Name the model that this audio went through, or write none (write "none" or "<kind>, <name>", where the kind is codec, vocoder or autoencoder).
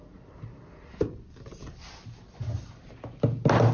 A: none